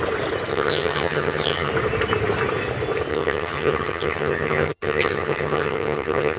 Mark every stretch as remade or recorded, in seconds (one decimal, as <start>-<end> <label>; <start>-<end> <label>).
0.0-0.5 recorded; 0.5-1.7 remade; 1.7-3.1 recorded; 3.1-6.4 remade